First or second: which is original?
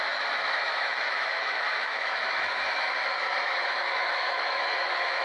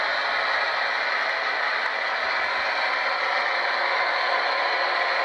second